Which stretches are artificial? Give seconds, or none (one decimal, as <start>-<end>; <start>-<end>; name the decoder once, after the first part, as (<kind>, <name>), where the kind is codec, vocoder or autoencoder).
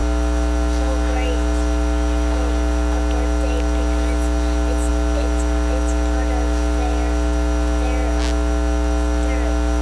none